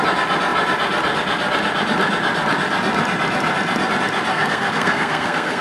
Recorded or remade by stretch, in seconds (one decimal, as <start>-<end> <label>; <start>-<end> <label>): 0.0-4.3 recorded; 4.3-5.6 remade